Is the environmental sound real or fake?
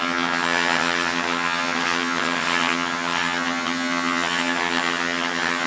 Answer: fake